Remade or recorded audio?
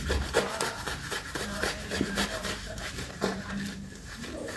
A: remade